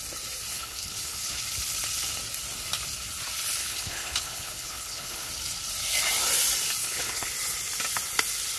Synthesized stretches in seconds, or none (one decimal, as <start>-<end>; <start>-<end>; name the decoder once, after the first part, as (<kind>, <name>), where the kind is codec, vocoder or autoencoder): 0.5-1.4 (codec, HILCodec); 3.6-5.3; 6.8-7.3